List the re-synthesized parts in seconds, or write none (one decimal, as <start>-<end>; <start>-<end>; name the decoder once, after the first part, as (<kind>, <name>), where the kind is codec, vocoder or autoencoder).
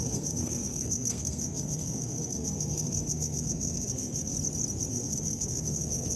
0.0-4.3 (codec, SNAC); 4.9-6.2